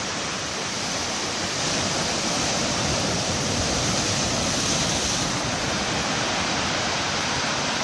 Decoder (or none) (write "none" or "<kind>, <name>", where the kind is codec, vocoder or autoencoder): vocoder, BigVGAN v2